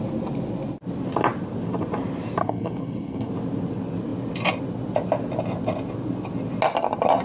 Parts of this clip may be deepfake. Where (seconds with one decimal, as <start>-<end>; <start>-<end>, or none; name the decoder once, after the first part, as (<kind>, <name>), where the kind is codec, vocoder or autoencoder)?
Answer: 2.4-3.3 (codec, SNAC)